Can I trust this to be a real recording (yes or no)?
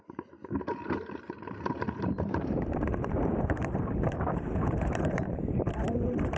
no